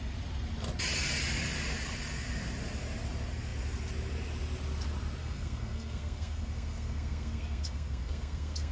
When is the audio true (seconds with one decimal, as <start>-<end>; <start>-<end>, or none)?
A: 0.0-5.2